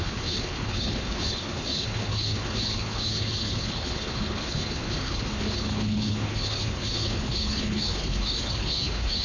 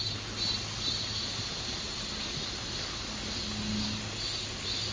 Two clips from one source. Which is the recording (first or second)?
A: second